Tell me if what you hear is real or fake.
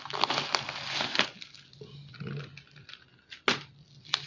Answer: real